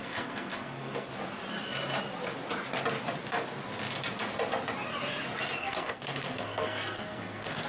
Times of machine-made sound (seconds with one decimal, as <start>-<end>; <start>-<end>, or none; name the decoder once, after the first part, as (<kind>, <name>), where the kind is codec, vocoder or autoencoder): 0.0-1.1 (codec, SNAC); 5.6-7.7